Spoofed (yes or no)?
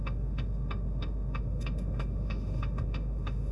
yes